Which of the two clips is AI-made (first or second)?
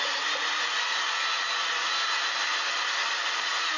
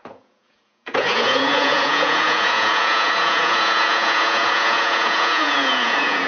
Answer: second